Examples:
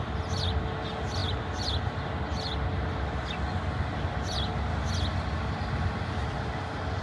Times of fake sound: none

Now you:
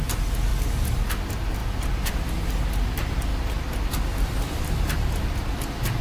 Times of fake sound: none

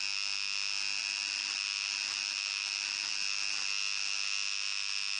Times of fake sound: none